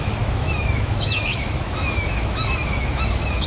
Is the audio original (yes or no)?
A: no